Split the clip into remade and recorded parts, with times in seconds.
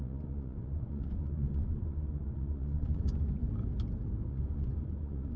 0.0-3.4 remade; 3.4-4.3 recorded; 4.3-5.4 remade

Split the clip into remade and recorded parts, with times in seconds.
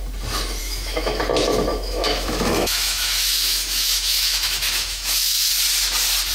0.0-0.6 recorded; 0.6-1.2 remade; 1.2-1.7 recorded; 1.7-5.5 remade; 5.5-6.3 recorded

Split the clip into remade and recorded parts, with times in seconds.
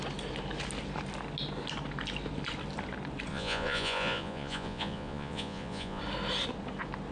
0.0-3.3 recorded; 3.3-6.0 remade; 6.0-7.1 recorded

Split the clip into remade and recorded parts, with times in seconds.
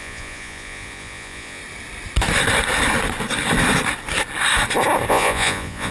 0.0-1.6 remade; 1.6-5.1 recorded; 5.1-5.9 remade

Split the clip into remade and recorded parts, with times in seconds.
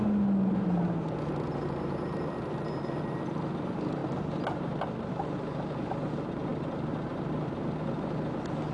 0.0-8.7 recorded